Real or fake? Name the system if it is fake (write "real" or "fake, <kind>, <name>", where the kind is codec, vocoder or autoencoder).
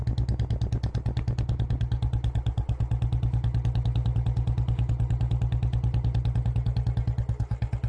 real